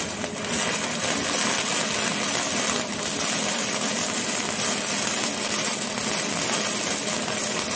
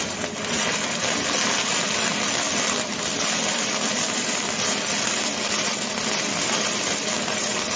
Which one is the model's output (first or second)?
second